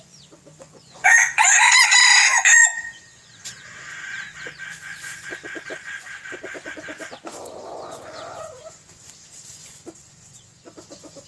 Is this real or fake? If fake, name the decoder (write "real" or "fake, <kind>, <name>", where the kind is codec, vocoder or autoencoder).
fake, vocoder, Vocos